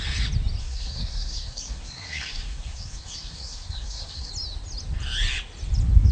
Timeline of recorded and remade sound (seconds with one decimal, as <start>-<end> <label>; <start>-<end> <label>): 0.0-0.6 recorded; 0.6-4.3 remade; 4.3-6.1 recorded

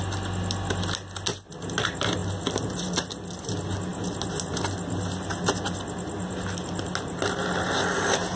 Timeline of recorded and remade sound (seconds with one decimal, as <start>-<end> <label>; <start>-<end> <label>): 0.0-2.2 recorded; 2.2-3.1 remade; 3.1-8.4 recorded

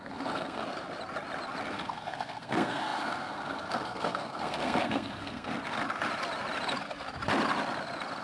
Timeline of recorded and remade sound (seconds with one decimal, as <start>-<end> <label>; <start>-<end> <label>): 0.0-0.6 remade; 0.6-1.7 recorded; 1.7-5.5 remade; 5.5-8.2 recorded

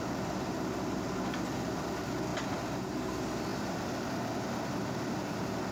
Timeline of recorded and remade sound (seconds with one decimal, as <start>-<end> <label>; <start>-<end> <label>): 0.0-5.7 recorded

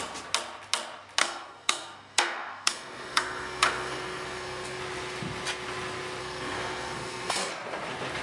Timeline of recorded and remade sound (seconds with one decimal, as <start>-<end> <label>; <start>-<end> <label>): 0.0-1.2 recorded; 1.2-4.8 remade; 4.8-6.2 recorded; 6.2-7.5 remade; 7.5-8.2 recorded

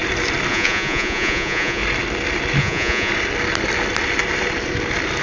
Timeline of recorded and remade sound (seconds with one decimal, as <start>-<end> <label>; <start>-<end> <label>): 0.0-0.5 recorded; 0.5-1.8 remade; 1.8-2.6 recorded; 2.6-3.1 remade; 3.1-5.2 recorded

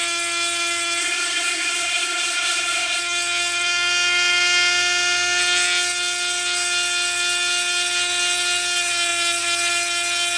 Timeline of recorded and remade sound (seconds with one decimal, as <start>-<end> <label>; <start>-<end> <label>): 0.0-1.0 recorded; 1.0-3.0 remade; 3.0-10.4 recorded

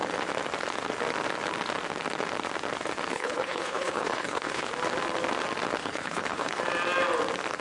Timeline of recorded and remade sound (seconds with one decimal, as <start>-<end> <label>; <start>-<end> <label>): 0.0-3.1 recorded; 3.1-4.7 remade; 4.7-5.8 recorded; 5.8-6.6 remade; 6.6-7.6 recorded